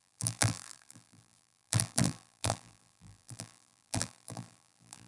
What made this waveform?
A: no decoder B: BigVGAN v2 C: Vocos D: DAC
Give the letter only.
B